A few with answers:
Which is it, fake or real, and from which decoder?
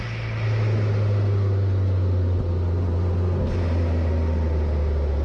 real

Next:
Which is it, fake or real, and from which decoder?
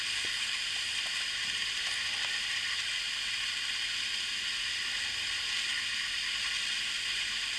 real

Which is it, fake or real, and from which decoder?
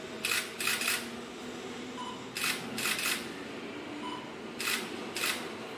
real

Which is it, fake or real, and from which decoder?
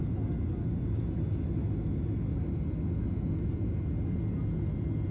real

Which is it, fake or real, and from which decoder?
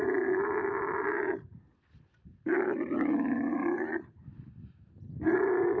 real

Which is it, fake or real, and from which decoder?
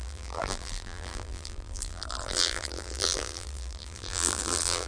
fake, vocoder, BigVGAN v2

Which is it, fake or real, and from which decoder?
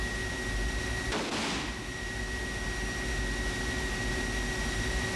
real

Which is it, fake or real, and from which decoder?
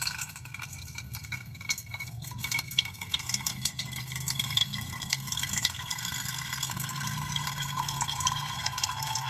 fake, codec, SNAC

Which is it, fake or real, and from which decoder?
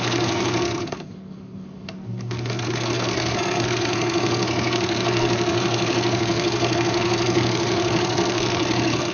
fake, codec, SNAC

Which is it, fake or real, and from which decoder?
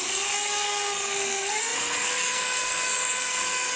fake, codec, SNAC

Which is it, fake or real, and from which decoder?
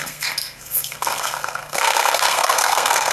fake, codec, SNAC